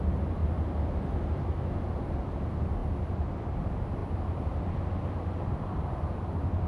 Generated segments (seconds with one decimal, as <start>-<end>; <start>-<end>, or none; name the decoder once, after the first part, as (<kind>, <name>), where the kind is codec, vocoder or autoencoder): 0.0-0.4 (vocoder, BigVGAN v2); 2.4-4.0; 4.6-6.7